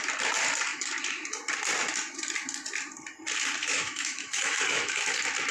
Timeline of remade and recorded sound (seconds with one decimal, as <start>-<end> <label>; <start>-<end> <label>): 0.0-3.6 recorded; 3.6-5.0 remade; 5.0-5.5 recorded